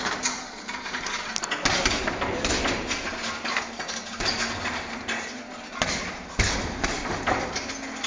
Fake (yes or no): no